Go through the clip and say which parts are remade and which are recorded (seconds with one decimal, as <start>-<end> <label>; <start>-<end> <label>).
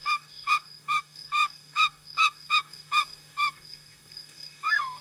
0.0-5.0 remade